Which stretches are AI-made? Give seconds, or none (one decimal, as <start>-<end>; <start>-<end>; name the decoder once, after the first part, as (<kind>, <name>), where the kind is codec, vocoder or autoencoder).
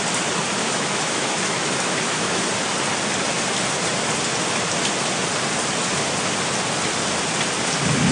0.6-2.5 (autoencoder, DAC-VAE)